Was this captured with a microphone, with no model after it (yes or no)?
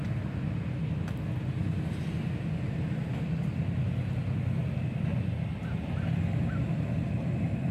yes